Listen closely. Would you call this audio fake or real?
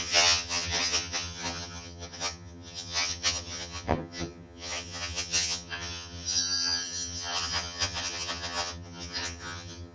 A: fake